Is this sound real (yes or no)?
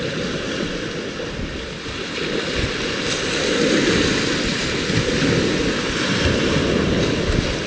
yes